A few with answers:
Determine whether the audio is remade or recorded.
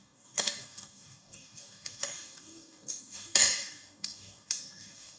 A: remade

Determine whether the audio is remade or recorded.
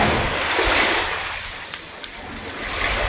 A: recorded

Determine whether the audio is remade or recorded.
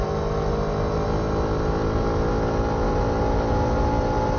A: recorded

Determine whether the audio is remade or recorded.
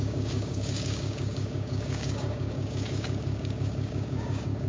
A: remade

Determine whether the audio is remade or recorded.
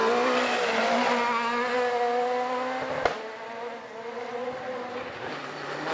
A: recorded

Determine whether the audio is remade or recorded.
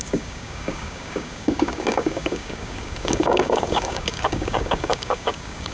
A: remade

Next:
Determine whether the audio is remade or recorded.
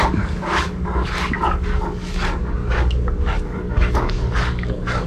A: remade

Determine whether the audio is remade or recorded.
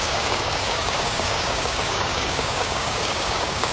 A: remade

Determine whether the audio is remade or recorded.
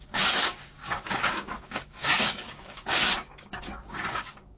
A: remade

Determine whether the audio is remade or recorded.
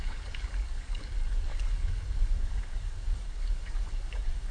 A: remade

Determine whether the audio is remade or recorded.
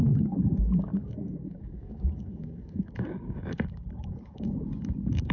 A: remade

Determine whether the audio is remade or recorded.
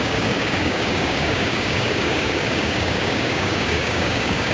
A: remade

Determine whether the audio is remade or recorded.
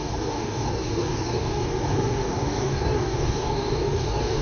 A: remade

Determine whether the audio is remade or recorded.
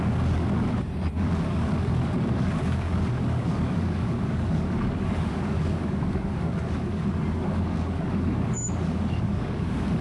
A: remade